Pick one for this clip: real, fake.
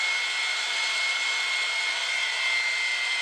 real